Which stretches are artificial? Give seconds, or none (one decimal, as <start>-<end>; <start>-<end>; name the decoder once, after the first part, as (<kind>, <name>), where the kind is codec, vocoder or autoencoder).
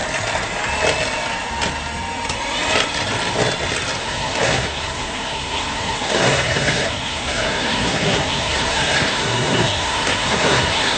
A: 4.0-11.0 (codec, SNAC)